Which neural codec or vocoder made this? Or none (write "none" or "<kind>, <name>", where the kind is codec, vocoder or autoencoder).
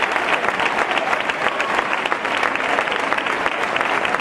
none